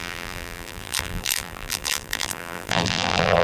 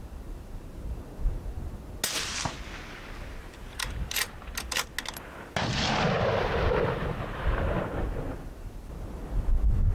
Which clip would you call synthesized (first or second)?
first